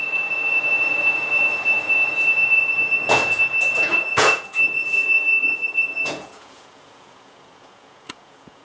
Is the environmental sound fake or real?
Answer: fake